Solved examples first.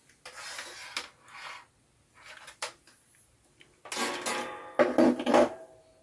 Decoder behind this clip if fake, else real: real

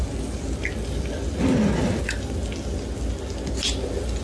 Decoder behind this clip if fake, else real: real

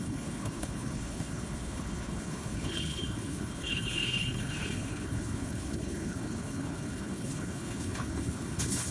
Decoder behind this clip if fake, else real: fake, codec, HILCodec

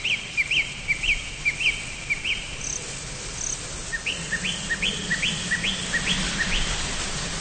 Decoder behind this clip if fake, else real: real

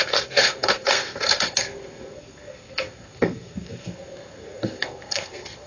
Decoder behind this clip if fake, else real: fake, codec, SNAC